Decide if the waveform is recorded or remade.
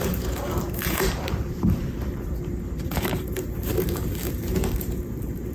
remade